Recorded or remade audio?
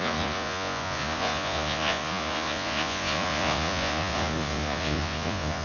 remade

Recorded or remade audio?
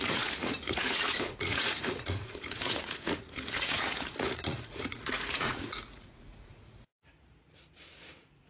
remade